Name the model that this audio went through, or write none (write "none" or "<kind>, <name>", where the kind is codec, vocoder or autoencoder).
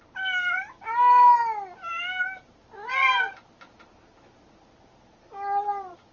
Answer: none